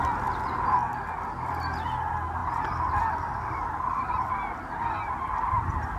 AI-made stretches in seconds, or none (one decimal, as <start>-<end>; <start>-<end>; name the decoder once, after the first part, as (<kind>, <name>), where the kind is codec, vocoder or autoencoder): none